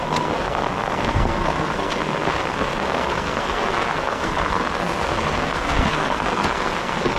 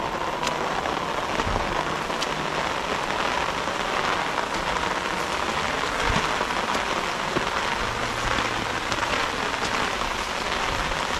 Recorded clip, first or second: second